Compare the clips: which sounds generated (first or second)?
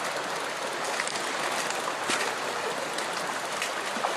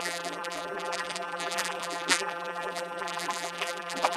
second